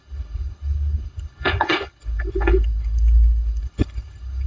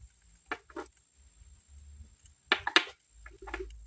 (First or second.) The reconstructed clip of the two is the first